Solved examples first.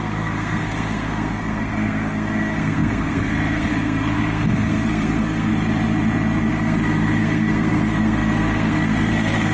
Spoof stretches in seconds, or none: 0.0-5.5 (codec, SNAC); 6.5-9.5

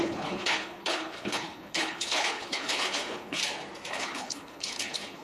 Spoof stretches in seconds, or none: 0.0-3.4 (codec, HILCodec); 3.9-5.2

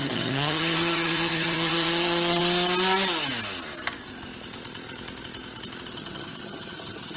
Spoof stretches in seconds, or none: 0.0-2.4 (vocoder, HiFi-GAN); 5.9-7.2